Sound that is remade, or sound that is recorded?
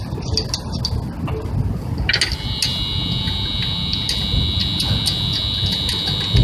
recorded